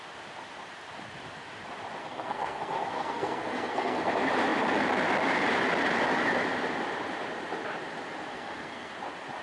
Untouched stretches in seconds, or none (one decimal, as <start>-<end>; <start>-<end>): 0.0-2.0; 4.1-8.3; 8.9-9.4